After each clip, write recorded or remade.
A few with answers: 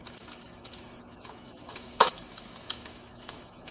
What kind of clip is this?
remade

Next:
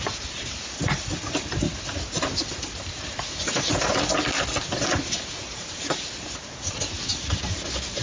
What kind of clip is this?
recorded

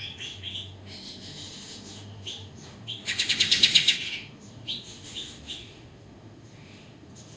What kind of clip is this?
remade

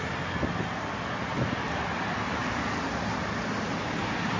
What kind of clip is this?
recorded